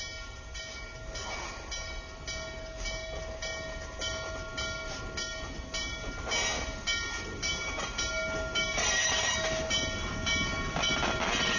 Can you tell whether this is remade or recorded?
recorded